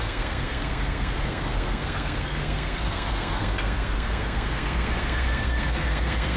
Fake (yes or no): yes